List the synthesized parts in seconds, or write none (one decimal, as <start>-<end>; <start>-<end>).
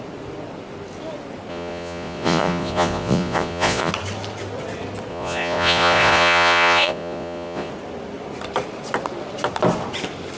1.5-3.9; 5.1-7.7